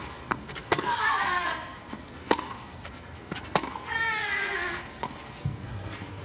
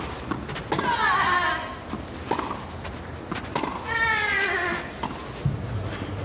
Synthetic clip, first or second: first